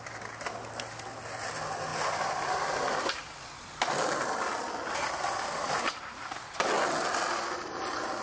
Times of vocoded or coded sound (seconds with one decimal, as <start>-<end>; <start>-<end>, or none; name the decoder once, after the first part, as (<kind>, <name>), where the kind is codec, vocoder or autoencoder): none